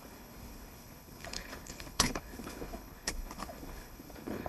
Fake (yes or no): yes